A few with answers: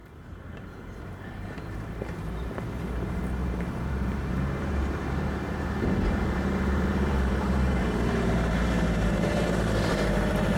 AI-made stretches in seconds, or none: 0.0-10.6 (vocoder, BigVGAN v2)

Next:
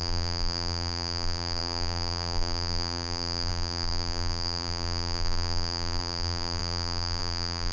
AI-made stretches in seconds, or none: 0.0-7.7 (vocoder, BigVGAN v2)

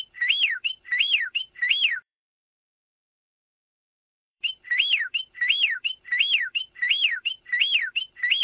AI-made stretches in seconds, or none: 0.0-8.4 (vocoder, BigVGAN v2)